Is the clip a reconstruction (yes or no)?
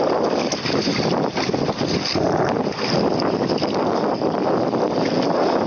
no